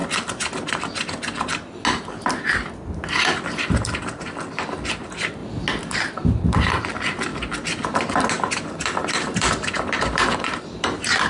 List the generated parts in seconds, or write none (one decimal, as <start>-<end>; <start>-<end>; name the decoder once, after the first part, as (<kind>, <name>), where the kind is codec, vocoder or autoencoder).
3.5-5.4 (vocoder, BigVGAN v2); 6.0-7.3; 8.5-11.3